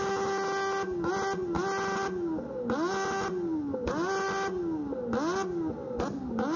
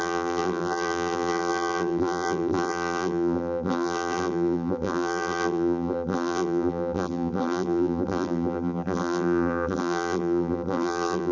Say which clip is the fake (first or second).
second